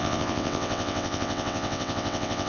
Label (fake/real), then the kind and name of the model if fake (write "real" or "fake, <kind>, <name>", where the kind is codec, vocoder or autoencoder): fake, vocoder, WaveNeXt